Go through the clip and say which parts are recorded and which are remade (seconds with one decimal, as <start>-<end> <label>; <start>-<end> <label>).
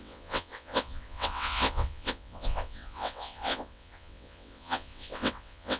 0.0-5.8 remade